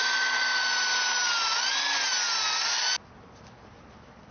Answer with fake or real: real